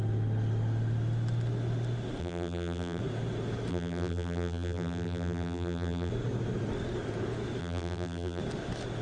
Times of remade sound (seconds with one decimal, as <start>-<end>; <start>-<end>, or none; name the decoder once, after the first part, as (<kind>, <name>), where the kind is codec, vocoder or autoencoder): 2.2-3.0 (vocoder, BigVGAN v2); 3.7-6.1; 7.6-8.4